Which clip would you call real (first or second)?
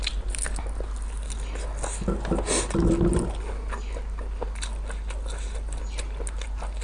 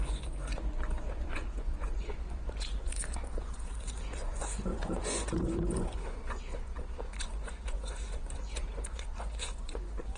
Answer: first